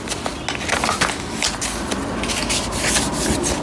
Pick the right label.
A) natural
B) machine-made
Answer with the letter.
A